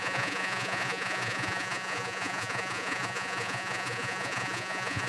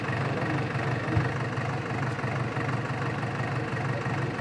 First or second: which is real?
second